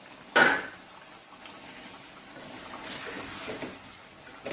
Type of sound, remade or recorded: recorded